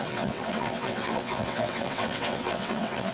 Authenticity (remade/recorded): remade